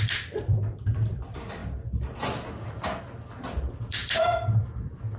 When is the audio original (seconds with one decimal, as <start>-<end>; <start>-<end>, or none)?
1.6-3.6; 4.0-4.6